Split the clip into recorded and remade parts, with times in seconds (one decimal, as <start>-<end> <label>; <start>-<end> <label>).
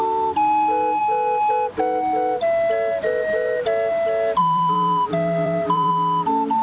0.0-4.4 recorded; 4.4-5.9 remade; 5.9-6.6 recorded